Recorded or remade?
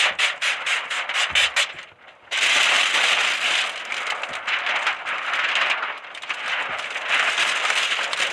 recorded